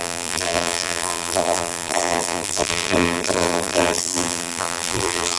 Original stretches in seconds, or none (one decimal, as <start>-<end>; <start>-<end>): none